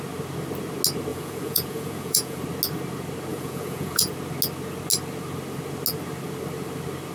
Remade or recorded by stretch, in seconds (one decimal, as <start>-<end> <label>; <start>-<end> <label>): 0.0-1.1 recorded; 1.1-2.4 remade; 2.4-3.3 recorded; 3.3-4.1 remade; 4.1-7.1 recorded